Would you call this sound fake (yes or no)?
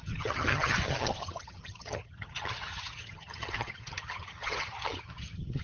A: yes